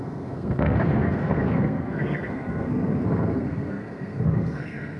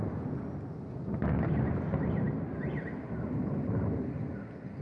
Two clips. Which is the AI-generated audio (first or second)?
first